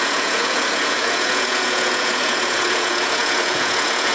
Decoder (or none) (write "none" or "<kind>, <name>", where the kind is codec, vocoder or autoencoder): vocoder, Vocos